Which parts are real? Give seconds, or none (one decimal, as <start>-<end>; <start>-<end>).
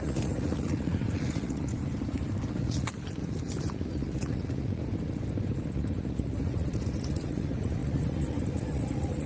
1.7-2.5; 3.2-3.7; 4.8-5.7